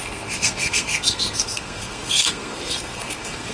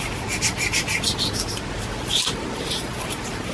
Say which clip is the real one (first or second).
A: second